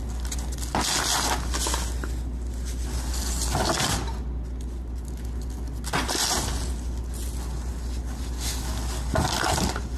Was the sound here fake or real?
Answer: real